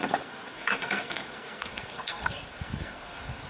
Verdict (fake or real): fake